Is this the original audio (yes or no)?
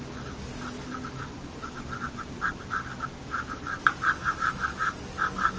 yes